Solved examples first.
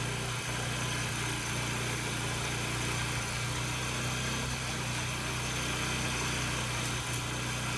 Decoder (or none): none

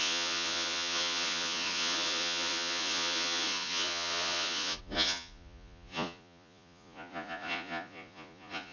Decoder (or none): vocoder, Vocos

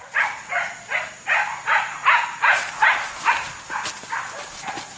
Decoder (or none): none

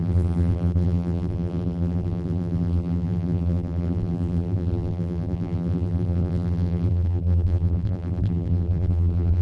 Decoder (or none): vocoder, BigVGAN v2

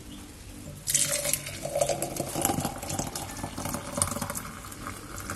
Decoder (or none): none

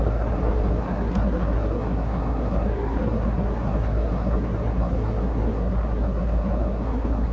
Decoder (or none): codec, SNAC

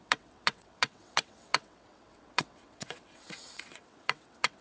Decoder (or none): vocoder, WaveNeXt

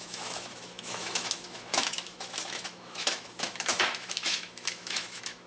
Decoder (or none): autoencoder, DAC-VAE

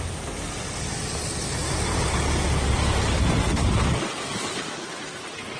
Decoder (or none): none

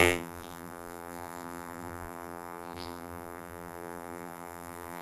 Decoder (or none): vocoder, BigVGAN v2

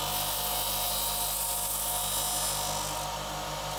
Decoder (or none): none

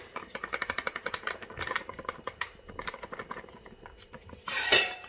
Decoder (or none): vocoder, BigVGAN v2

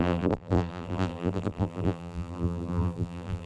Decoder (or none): vocoder, BigVGAN v2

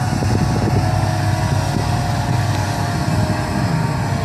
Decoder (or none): none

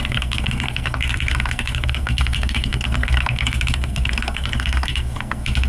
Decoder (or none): codec, SNAC